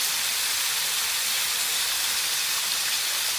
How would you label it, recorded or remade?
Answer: recorded